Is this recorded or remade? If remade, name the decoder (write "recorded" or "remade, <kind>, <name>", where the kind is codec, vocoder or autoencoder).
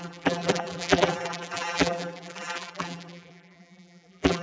remade, vocoder, BigVGAN v2